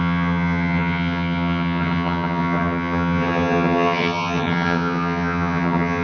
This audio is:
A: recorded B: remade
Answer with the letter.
B